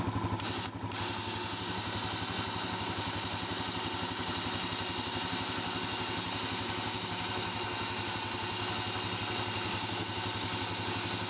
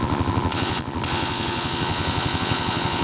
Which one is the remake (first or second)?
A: second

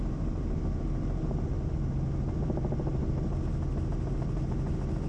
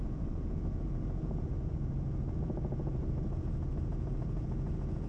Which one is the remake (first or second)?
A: second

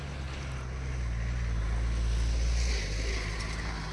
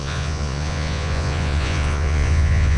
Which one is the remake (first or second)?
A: second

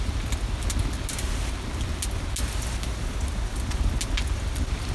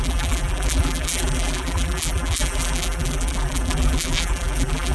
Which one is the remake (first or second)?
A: second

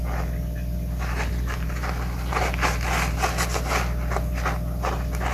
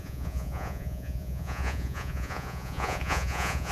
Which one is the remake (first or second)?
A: second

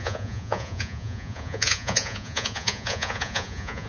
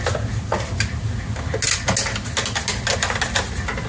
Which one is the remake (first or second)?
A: first